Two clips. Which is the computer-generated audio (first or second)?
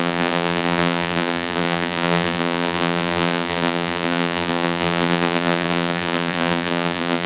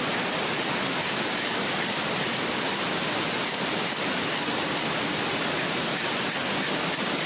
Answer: first